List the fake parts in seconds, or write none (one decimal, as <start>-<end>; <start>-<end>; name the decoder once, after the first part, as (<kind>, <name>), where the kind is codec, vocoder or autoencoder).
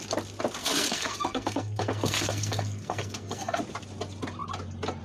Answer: 0.6-3.6 (codec, SNAC)